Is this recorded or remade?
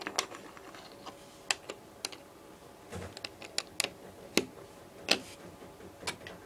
recorded